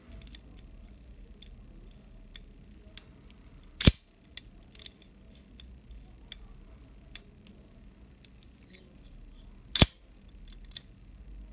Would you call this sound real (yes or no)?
yes